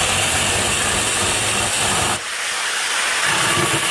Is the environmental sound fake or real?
real